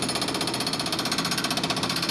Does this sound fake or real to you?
real